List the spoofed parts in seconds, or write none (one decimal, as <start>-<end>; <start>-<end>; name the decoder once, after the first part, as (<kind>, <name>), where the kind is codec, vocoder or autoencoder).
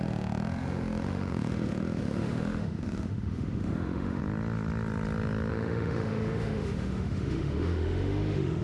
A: 0.0-4.2 (autoencoder, DAC-VAE); 5.5-8.6